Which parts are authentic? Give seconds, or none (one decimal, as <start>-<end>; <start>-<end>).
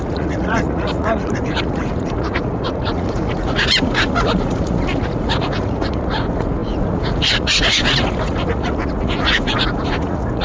none